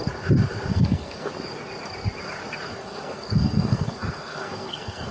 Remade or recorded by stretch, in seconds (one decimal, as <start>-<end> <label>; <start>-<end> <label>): 0.0-0.7 recorded; 0.7-1.3 remade; 1.3-2.7 recorded; 2.7-5.1 remade